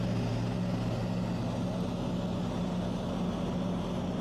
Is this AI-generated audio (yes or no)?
no